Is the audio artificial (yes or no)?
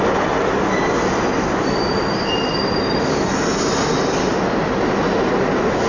no